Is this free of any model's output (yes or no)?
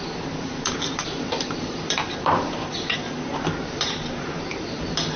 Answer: no